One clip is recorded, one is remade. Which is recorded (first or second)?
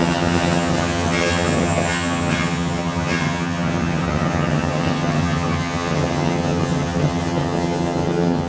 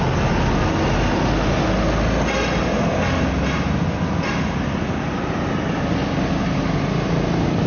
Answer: second